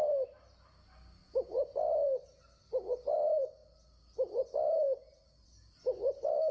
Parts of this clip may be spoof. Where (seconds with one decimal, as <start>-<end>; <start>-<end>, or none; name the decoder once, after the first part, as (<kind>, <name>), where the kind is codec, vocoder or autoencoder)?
none